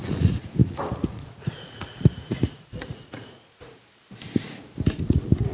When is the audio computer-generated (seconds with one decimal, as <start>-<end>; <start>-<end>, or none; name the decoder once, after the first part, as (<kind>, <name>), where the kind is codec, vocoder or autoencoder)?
0.0-3.7 (vocoder, Vocos); 5.1-5.5